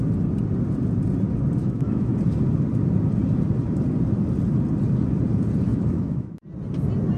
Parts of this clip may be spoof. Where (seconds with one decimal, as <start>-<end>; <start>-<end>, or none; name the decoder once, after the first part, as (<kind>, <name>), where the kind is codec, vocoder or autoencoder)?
1.6-2.1 (autoencoder, DAC-VAE); 5.7-6.4